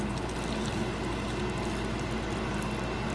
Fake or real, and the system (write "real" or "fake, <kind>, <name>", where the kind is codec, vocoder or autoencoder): real